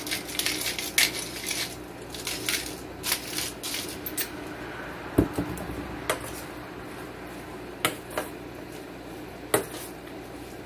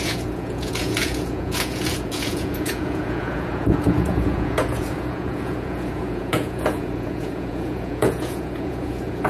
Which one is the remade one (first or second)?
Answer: second